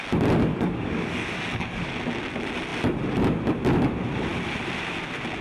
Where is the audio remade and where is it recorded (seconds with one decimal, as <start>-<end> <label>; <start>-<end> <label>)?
0.0-0.5 recorded; 0.5-1.9 remade; 1.9-5.4 recorded